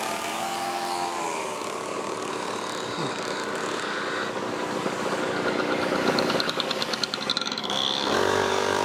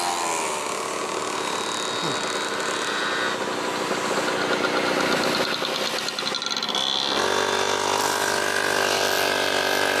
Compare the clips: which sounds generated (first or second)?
first